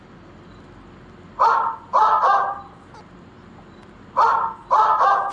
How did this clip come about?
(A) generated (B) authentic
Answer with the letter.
B